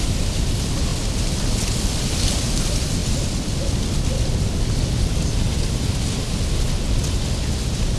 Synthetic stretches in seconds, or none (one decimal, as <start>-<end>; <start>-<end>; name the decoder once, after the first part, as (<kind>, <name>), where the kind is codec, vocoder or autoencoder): none